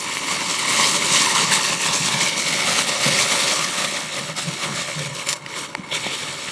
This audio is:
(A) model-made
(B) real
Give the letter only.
A